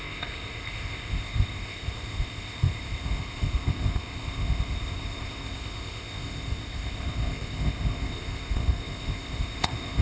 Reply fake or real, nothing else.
fake